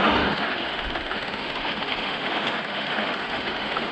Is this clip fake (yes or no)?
yes